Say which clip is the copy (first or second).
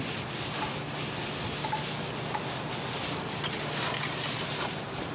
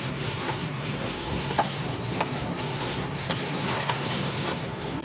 second